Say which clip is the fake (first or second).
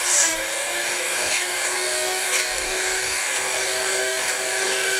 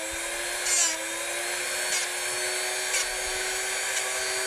first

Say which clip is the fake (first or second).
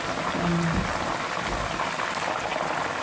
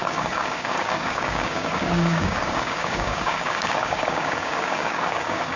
second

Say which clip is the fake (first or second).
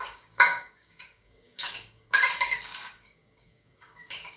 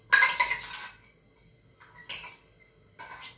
first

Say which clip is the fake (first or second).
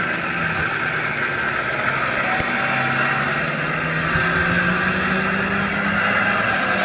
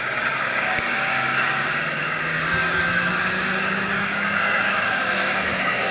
second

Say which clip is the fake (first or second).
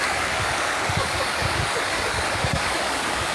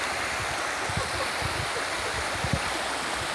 first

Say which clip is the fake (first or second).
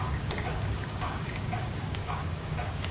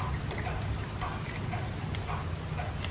first